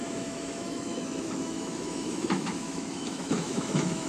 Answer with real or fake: fake